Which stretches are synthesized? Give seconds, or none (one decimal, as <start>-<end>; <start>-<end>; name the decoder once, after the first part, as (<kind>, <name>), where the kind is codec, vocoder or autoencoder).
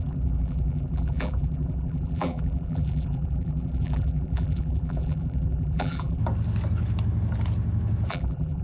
0.0-6.2 (vocoder, BigVGAN v2); 8.1-8.6